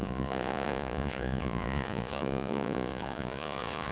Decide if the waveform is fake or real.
fake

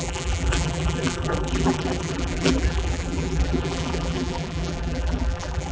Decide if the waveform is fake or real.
fake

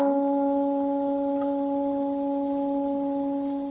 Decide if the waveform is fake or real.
real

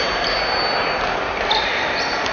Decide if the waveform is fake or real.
real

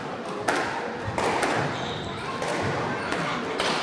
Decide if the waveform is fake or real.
real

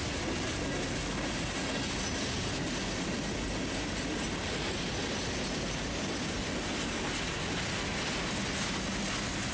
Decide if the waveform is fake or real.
real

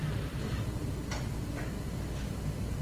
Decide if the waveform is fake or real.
real